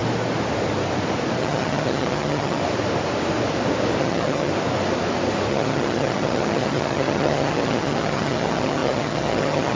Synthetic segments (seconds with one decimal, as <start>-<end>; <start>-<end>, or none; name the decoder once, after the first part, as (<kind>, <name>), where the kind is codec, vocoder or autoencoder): 1.4-2.6 (vocoder, HiFi-GAN); 4.0-4.5; 5.5-9.8